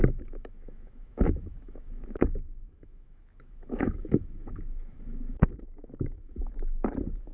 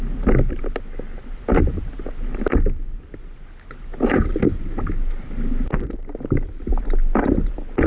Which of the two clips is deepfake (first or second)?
first